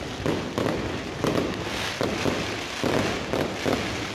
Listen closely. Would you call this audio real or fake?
real